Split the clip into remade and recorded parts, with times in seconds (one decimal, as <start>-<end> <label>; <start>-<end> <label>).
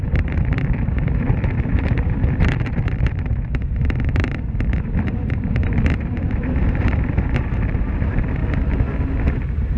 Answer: 0.0-8.4 remade; 8.4-9.3 recorded; 9.3-9.8 remade